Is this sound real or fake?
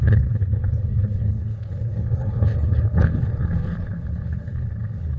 fake